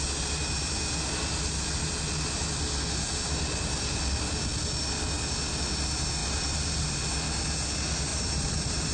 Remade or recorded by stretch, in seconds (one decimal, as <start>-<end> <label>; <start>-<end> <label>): 0.0-6.2 recorded; 6.2-7.0 remade; 7.0-8.1 recorded; 8.1-8.9 remade